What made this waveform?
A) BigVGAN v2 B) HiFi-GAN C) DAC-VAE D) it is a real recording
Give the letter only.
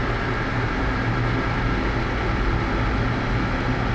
D